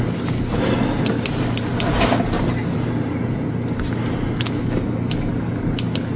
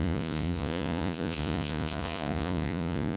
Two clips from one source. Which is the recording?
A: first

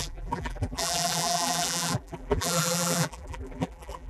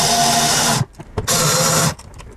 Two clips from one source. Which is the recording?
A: second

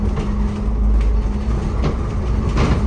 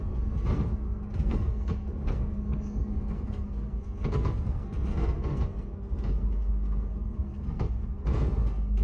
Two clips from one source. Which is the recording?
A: first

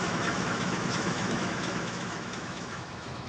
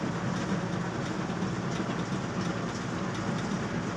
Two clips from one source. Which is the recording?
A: second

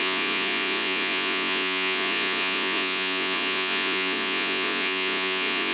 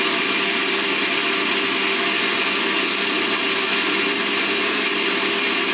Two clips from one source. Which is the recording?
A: second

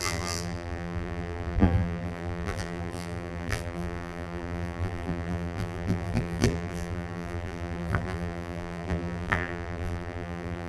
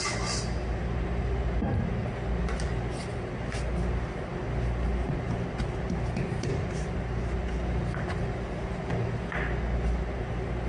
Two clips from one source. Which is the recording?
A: second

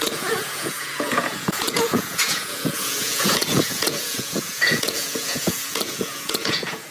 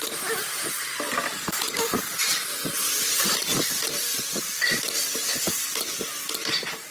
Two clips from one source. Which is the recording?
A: second